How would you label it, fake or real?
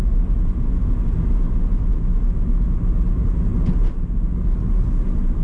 real